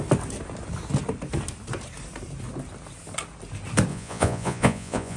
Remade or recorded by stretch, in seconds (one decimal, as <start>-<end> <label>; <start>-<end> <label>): 0.0-3.9 recorded; 3.9-5.2 remade